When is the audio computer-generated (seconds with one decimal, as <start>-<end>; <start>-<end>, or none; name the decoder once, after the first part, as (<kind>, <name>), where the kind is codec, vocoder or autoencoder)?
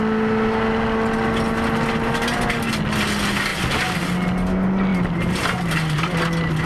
none